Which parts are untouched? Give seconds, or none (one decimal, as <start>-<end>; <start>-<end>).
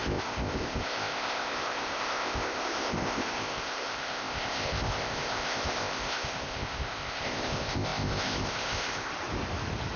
9.1-10.0